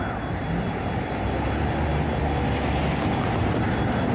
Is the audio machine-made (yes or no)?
no